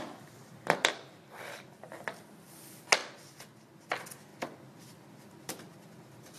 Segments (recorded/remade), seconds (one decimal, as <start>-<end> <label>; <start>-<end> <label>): 0.0-6.4 recorded